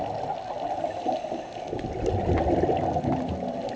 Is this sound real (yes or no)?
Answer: yes